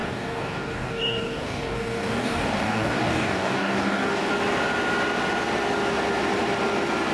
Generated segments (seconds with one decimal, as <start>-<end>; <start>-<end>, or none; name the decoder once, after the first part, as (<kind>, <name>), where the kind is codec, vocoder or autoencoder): 0.0-4.3 (codec, DAC)